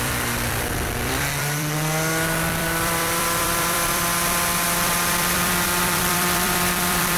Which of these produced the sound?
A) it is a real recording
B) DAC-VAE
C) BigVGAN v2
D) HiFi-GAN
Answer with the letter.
C